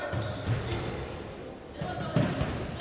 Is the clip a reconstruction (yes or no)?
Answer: no